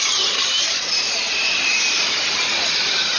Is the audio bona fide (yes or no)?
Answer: no